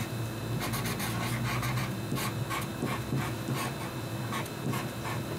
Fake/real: real